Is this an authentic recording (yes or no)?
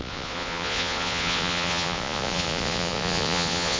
no